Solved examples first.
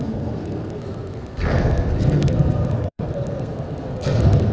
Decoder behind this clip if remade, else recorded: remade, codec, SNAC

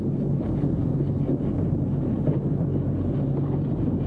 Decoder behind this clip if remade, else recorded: recorded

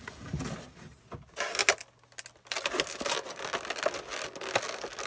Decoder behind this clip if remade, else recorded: recorded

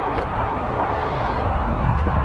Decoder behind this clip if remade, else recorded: remade, codec, SNAC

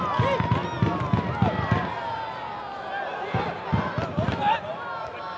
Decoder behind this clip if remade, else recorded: recorded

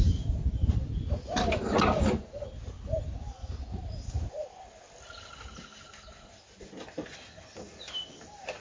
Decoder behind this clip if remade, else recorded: recorded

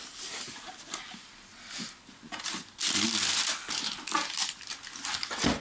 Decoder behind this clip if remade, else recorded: recorded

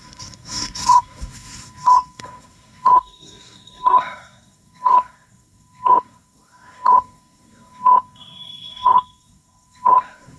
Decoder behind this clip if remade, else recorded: remade, codec, SNAC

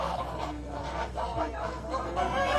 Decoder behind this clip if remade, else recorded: remade, codec, SNAC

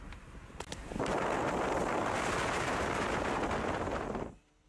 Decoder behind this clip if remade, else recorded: recorded